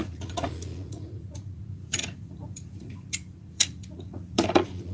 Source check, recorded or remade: remade